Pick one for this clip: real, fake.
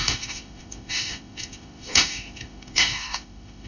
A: fake